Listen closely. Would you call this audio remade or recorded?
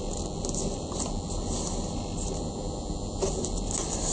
recorded